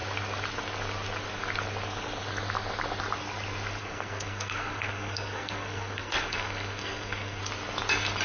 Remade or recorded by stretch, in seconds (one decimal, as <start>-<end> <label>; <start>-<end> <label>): 0.0-3.8 recorded; 3.8-7.4 remade; 7.4-8.2 recorded